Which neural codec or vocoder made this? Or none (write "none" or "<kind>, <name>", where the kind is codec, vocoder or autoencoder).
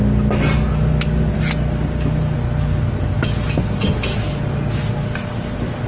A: none